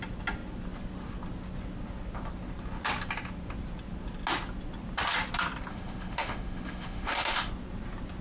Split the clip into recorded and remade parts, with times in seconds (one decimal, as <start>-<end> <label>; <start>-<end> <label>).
0.0-5.7 recorded; 5.7-7.5 remade; 7.5-8.2 recorded